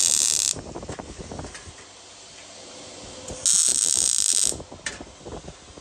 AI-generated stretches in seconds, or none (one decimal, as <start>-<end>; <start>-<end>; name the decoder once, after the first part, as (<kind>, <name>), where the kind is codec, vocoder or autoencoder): none